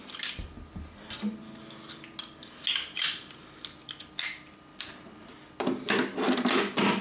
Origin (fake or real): real